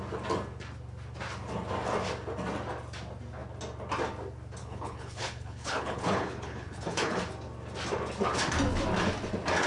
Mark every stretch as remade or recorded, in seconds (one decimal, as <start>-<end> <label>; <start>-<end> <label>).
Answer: 0.0-4.6 recorded; 4.6-7.2 remade; 7.2-9.7 recorded